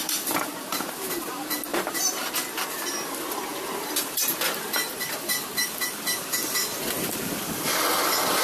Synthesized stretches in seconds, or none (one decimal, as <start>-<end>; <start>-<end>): 0.0-0.9; 1.7-2.3; 5.2-5.8

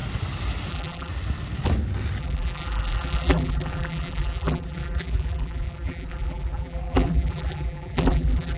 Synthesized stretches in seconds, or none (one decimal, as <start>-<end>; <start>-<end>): 0.7-1.1; 2.2-8.6

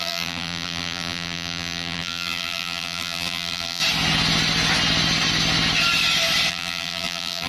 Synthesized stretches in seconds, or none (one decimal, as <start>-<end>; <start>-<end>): 0.0-3.8; 6.5-7.5

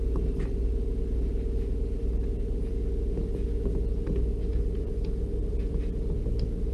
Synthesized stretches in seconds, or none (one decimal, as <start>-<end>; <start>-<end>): 4.5-5.7